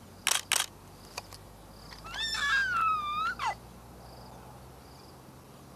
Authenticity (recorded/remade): recorded